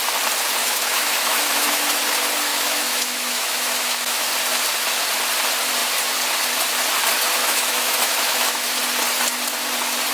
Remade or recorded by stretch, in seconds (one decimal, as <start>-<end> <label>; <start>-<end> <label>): 0.0-0.6 recorded; 0.6-1.8 remade; 1.8-2.5 recorded; 2.5-4.2 remade; 4.2-7.4 recorded; 7.4-8.8 remade; 8.8-10.1 recorded